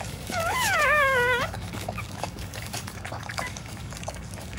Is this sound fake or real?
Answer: fake